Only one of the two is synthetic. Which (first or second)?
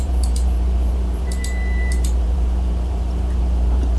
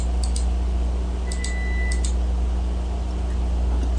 first